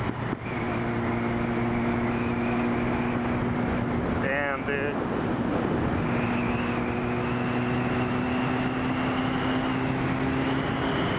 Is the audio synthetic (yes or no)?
no